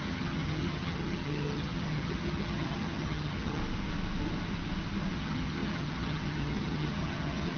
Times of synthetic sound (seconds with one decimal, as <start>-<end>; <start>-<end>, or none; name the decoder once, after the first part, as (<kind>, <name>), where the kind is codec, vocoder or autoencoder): 0.0-3.6 (vocoder, HiFi-GAN); 5.1-7.6